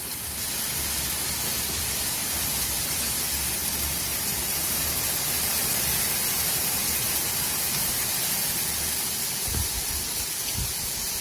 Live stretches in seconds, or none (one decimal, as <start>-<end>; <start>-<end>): 0.0-2.2; 2.8-3.6; 4.6-5.5; 6.8-11.2